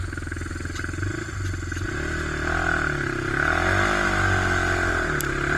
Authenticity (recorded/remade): recorded